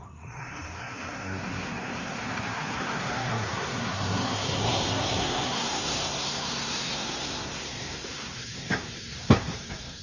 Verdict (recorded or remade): remade